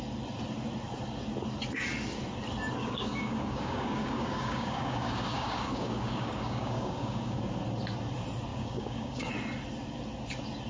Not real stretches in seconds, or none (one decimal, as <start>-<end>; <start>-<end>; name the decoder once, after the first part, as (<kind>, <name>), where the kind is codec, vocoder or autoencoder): 2.8-7.4 (codec, DAC); 8.5-9.3